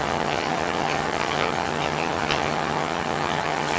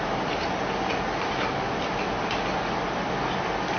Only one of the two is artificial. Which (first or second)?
first